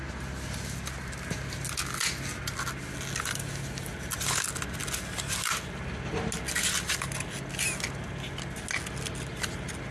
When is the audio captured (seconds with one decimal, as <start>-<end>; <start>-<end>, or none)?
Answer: 0.0-9.9